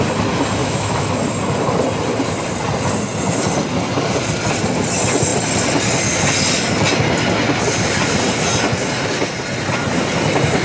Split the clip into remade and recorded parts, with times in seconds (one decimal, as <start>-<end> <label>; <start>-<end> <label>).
0.0-0.6 recorded; 0.6-1.1 remade; 1.1-10.6 recorded